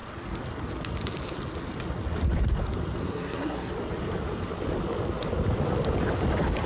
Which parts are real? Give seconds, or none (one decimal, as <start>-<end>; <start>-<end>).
0.0-3.0; 3.7-6.7